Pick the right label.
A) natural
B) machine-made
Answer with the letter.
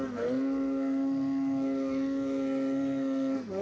B